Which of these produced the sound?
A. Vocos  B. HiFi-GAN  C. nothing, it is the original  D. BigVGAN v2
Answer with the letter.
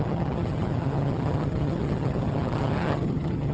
B